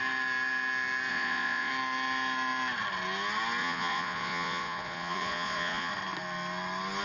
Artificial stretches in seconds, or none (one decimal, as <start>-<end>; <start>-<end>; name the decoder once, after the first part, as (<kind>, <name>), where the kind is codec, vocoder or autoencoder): 1.1-1.7 (vocoder, Vocos); 3.6-5.9